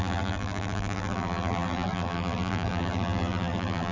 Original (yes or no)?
no